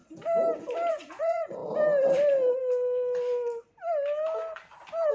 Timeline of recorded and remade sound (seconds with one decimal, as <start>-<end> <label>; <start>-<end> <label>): 0.0-0.9 recorded; 0.9-1.6 remade; 1.6-5.1 recorded